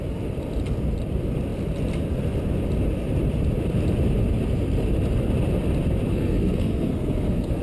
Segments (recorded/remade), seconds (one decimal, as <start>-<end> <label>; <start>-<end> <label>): 0.0-6.1 recorded; 6.1-7.6 remade